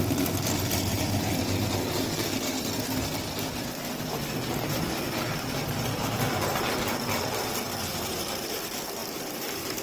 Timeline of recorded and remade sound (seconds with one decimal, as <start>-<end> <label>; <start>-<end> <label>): 0.0-0.9 recorded; 0.9-1.4 remade; 1.4-9.0 recorded; 9.0-9.8 remade